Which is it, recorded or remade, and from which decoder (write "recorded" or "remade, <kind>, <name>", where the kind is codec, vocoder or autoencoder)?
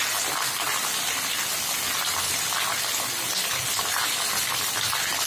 recorded